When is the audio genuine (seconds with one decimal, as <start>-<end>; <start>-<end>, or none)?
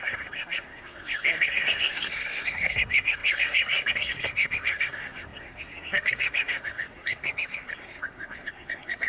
none